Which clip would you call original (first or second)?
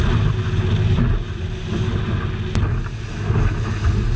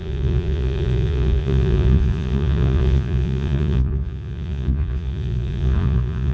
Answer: first